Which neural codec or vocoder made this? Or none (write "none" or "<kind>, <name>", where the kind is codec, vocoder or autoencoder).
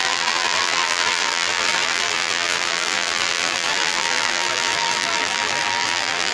vocoder, BigVGAN v2